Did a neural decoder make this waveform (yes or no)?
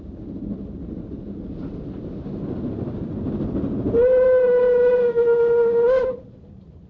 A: no